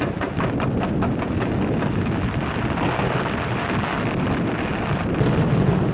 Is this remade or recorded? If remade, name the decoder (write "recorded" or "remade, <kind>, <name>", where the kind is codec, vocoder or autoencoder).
recorded